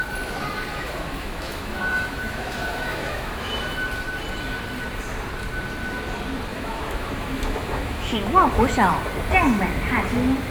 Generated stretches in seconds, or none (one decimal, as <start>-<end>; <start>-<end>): 0.7-3.5; 6.5-8.9